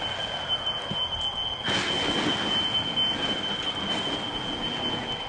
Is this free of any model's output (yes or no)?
yes